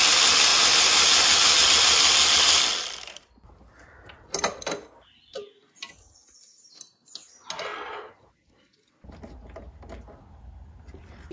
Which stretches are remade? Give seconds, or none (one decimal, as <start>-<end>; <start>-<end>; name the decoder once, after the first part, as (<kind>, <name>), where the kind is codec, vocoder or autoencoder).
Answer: none